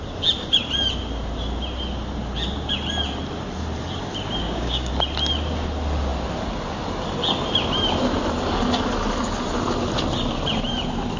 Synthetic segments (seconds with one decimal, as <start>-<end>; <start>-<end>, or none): 4.4-4.9